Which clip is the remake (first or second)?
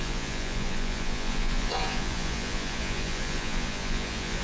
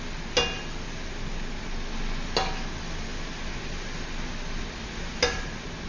first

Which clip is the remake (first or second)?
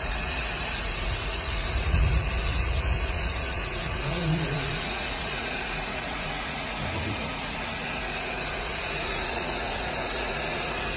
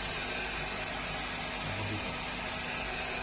first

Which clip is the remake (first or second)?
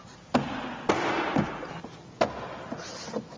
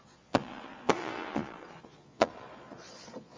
second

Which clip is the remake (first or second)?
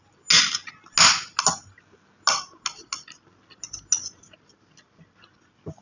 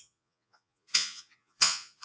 second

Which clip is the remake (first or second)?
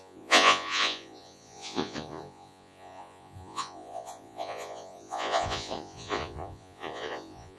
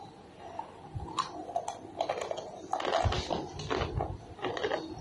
first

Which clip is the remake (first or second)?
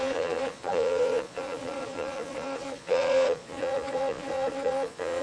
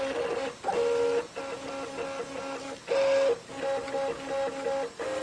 first